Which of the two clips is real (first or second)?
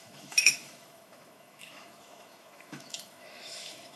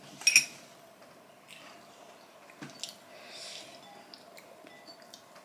second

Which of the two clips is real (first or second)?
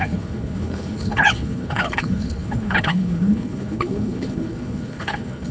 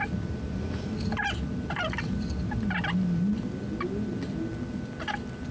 second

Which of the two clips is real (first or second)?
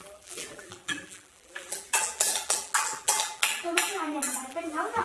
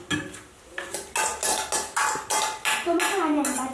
second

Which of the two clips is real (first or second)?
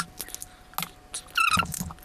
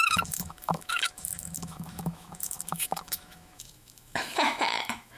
first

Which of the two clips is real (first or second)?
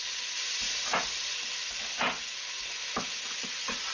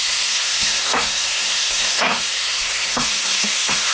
first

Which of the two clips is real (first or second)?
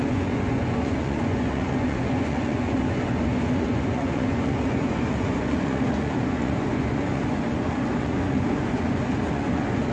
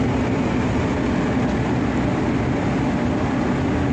second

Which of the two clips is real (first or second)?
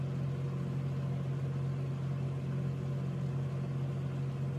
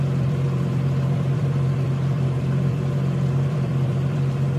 first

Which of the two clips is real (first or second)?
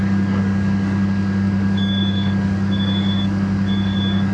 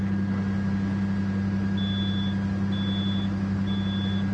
second